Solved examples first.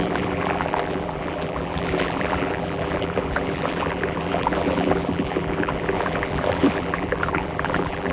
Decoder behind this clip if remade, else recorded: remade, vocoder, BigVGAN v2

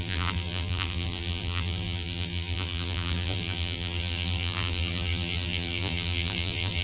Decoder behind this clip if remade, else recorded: remade, vocoder, BigVGAN v2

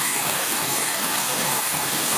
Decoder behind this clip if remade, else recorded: remade, codec, DAC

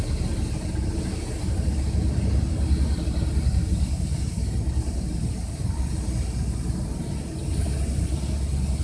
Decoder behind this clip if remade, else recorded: recorded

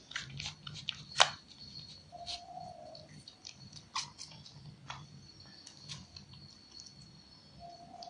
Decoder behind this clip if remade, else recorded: recorded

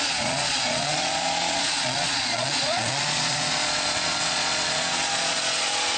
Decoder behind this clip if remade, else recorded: remade, vocoder, Vocos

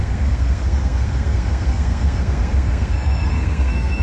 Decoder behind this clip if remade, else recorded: remade, codec, SNAC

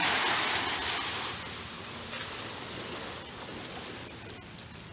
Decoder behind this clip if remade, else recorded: recorded